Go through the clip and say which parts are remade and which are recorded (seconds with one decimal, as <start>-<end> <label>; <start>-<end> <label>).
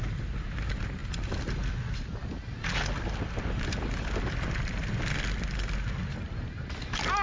0.0-7.2 recorded